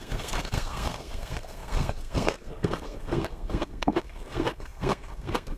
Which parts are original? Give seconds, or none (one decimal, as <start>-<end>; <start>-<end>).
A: none